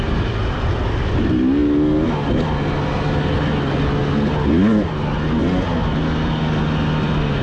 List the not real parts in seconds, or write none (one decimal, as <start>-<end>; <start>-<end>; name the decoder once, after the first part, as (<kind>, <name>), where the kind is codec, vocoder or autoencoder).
none